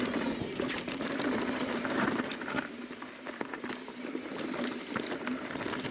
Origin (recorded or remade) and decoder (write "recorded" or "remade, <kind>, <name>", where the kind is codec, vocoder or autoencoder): recorded